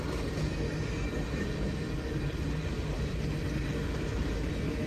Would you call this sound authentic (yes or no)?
yes